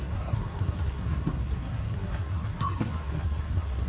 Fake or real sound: fake